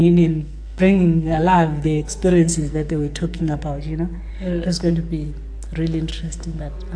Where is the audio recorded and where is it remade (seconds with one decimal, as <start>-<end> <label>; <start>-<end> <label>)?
0.0-3.6 remade; 3.6-4.3 recorded; 4.3-4.9 remade; 4.9-6.1 recorded; 6.1-6.6 remade; 6.6-7.0 recorded